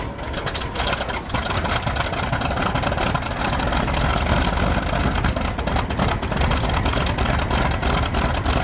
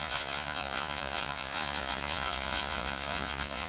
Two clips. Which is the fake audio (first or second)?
second